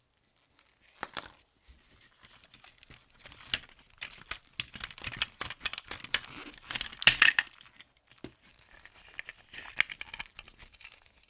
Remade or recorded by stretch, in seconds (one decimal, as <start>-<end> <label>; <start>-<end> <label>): 0.0-11.3 recorded